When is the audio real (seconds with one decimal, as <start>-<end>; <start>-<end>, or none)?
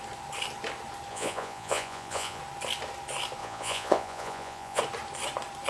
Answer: 0.0-1.1; 2.4-3.4; 4.8-5.7